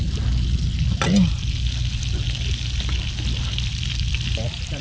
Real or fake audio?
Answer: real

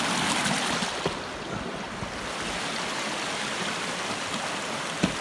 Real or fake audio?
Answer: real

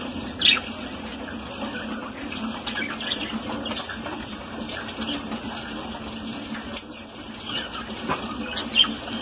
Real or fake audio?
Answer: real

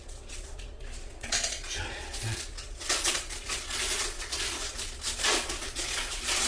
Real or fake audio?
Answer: fake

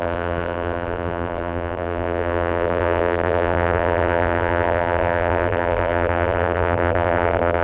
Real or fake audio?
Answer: fake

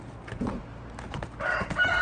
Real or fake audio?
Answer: real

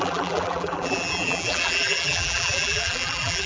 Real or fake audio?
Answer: fake